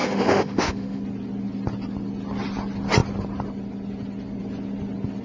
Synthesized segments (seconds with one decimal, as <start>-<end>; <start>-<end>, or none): 0.0-1.0